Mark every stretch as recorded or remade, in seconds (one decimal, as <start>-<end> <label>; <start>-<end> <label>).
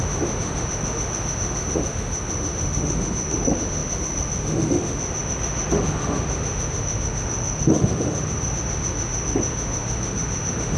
0.0-10.8 remade